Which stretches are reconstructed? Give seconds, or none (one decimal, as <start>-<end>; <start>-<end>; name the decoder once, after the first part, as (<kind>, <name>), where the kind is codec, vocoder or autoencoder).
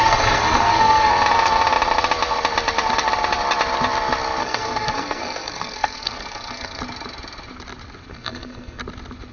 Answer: 0.0-1.1 (codec, SNAC); 4.4-6.8; 8.1-8.8